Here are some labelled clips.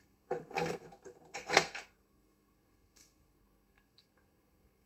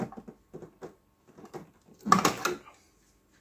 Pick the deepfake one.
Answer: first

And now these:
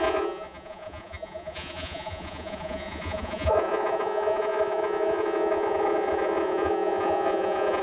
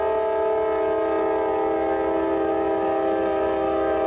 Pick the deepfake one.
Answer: first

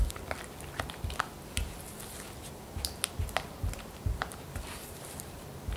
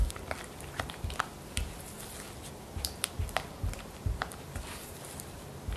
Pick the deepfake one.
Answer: first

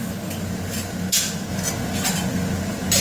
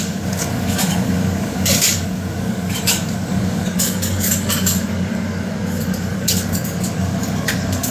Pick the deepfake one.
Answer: second